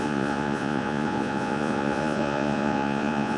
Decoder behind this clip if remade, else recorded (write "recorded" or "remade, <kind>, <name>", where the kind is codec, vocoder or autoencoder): remade, vocoder, Vocos